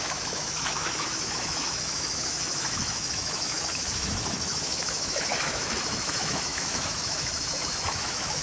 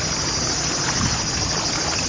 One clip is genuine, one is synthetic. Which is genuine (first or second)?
second